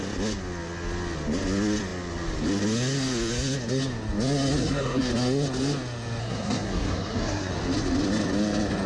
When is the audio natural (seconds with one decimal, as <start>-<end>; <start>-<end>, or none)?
0.0-4.6; 5.1-6.2; 7.5-8.9

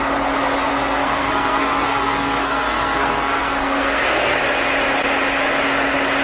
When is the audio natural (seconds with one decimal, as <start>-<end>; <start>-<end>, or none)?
0.0-0.7; 4.4-6.2

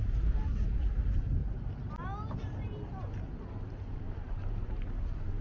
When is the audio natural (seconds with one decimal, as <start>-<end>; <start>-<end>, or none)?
1.4-3.6

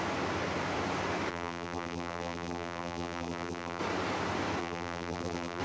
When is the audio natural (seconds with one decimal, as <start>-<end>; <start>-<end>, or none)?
0.0-1.3; 3.8-4.6

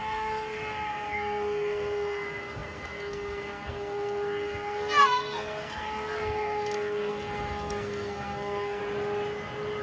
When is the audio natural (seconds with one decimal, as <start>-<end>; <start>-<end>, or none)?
8.8-9.8